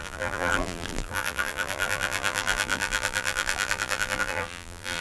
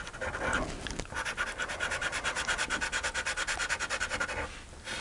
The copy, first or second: first